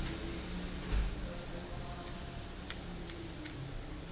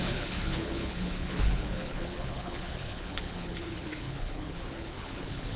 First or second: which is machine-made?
second